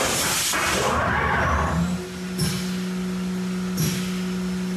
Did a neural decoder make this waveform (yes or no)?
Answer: no